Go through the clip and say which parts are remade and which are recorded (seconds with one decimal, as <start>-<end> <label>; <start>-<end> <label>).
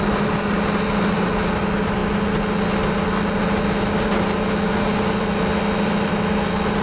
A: 0.0-6.8 recorded